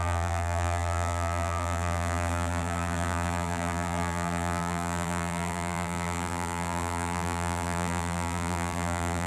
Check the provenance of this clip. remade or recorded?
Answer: remade